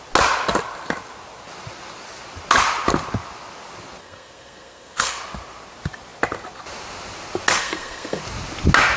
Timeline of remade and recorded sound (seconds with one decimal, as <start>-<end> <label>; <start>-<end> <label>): 0.0-4.0 recorded; 4.0-5.2 remade; 5.2-7.6 recorded; 7.6-8.2 remade; 8.2-9.0 recorded